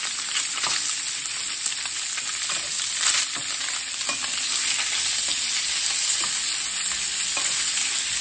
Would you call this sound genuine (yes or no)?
yes